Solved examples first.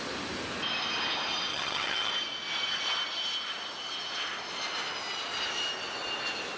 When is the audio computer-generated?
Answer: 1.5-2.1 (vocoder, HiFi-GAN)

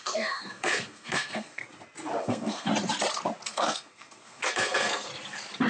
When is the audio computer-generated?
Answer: 0.0-1.6 (codec, SNAC); 2.2-2.7; 3.5-5.1

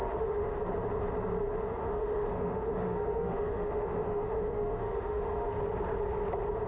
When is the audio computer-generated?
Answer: 0.0-0.6 (autoencoder, DAC-VAE); 1.8-5.6

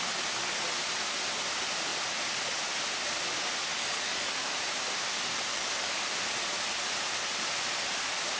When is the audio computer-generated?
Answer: 3.7-4.5 (codec, DAC); 5.5-6.0